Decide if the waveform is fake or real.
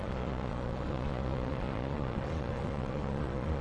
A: fake